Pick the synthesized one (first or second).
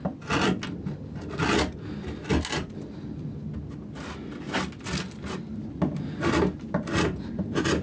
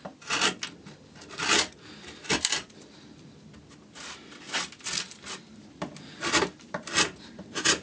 second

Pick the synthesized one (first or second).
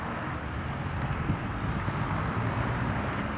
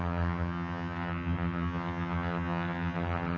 second